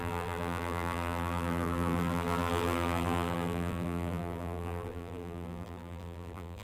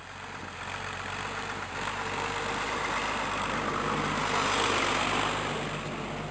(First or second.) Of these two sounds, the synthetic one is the first